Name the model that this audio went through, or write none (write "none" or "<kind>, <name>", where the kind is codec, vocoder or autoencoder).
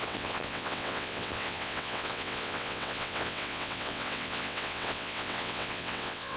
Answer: vocoder, WaveNeXt